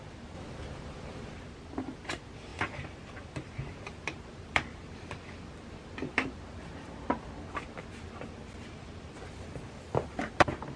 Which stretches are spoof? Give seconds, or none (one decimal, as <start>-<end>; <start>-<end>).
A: 2.5-5.5